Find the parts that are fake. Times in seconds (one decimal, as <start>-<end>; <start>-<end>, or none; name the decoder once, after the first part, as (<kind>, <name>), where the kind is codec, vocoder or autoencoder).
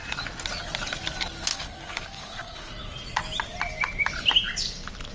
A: 1.5-2.7 (codec, DAC)